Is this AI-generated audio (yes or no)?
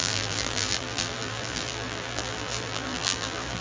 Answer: yes